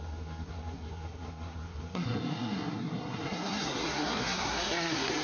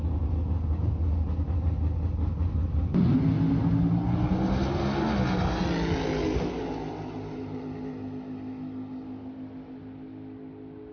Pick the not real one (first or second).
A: first